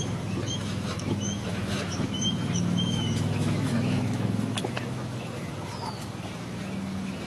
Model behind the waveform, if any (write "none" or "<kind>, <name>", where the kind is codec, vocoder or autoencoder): autoencoder, DAC-VAE